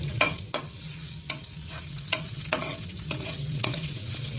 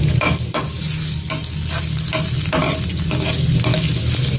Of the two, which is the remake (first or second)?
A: first